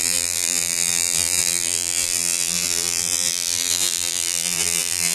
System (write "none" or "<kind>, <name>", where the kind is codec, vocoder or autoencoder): vocoder, BigVGAN v2